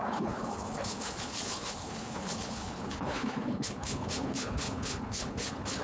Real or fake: fake